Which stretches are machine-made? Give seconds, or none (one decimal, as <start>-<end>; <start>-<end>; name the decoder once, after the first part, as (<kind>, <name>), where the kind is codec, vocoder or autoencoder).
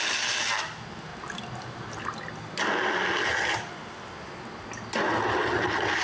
none